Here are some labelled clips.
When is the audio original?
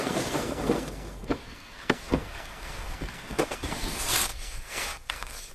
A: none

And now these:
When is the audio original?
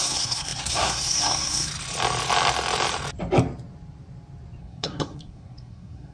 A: 1.7-4.6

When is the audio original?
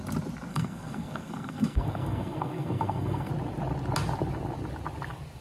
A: 0.0-0.5; 3.3-5.4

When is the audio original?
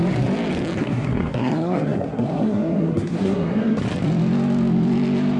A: 0.0-0.8; 3.8-5.4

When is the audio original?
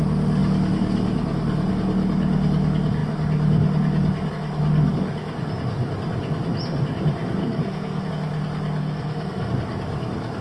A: 0.0-7.4; 8.1-8.8; 9.5-10.4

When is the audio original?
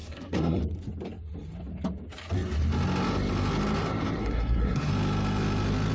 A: 0.6-4.2; 4.9-5.9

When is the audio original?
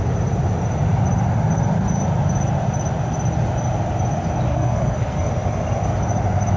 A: 0.0-4.5; 5.3-6.6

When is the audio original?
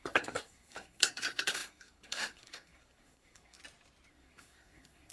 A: 3.6-4.1